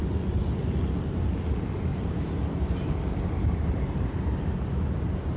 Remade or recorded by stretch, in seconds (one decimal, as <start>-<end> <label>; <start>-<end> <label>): 0.0-1.9 recorded; 1.9-5.4 remade